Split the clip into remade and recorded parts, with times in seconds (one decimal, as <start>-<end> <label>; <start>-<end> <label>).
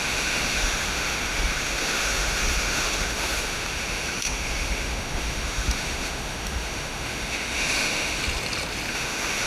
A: 0.0-8.2 remade; 8.2-8.9 recorded; 8.9-9.5 remade